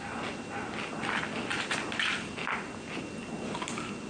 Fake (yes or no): no